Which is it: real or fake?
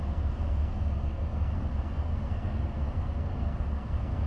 fake